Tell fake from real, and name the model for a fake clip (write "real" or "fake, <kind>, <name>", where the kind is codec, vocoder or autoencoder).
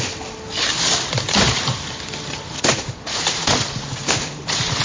real